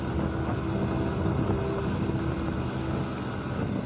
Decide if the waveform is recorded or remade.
recorded